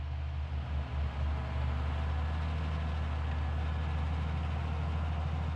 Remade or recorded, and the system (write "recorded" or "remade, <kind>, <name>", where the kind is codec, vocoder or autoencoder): recorded